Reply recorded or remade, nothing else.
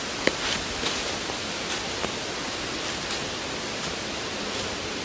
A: remade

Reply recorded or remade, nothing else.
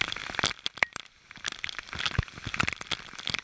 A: remade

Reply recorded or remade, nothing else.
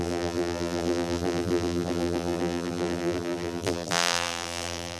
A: remade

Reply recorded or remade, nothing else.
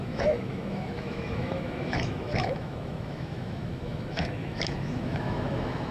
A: remade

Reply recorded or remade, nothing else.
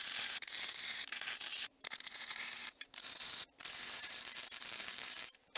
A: remade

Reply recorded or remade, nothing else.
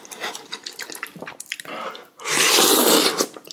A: recorded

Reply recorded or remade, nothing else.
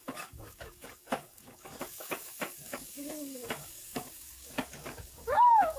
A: remade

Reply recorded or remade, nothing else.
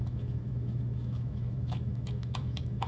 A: remade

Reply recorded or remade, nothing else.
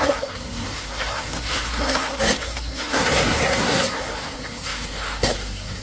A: remade